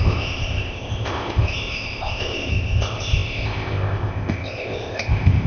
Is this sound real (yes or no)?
no